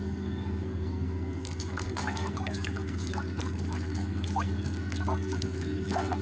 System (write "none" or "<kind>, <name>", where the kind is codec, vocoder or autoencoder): codec, SNAC